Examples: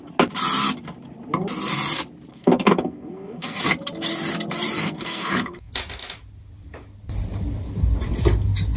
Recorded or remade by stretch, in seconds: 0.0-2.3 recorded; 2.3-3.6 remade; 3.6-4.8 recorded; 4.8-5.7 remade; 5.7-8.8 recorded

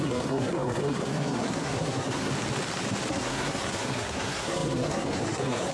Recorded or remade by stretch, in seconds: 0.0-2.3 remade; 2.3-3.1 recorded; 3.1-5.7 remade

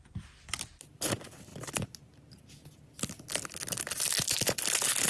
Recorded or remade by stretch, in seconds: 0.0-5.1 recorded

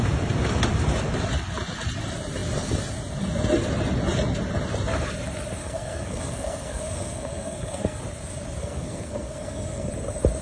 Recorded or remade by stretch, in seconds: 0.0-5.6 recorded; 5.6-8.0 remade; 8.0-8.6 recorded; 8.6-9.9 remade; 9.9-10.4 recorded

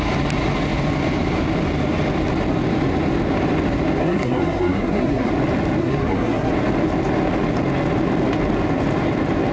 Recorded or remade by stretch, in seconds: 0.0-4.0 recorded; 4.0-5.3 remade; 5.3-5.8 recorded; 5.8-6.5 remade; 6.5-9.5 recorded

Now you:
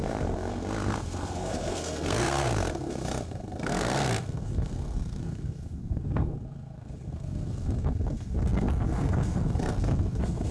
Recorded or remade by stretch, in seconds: 0.0-10.5 remade